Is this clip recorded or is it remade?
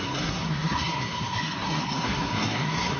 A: remade